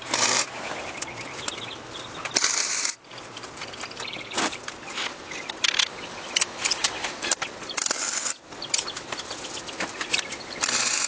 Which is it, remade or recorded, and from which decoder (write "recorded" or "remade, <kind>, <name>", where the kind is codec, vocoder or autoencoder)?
remade, vocoder, BigVGAN v2